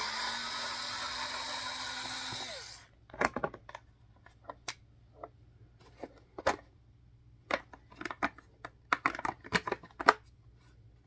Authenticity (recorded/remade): recorded